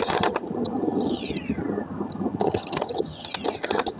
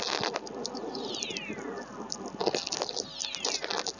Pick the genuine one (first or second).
second